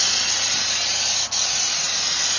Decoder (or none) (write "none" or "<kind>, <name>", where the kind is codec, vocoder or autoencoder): none